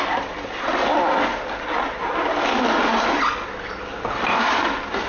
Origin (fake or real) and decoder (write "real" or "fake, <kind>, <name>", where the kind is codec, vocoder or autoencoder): real